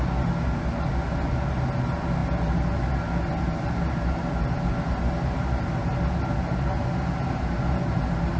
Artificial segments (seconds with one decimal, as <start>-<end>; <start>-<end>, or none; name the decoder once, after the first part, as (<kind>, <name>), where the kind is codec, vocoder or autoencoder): none